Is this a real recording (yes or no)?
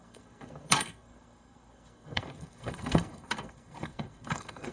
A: no